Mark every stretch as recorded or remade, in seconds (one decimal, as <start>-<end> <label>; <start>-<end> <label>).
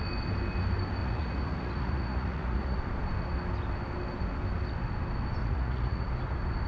0.0-1.0 recorded; 1.0-2.8 remade; 2.8-5.4 recorded; 5.4-6.1 remade; 6.1-6.7 recorded